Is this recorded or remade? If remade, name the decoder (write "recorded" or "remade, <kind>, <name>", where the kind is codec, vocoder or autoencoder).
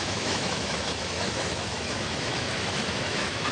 remade, autoencoder, DAC-VAE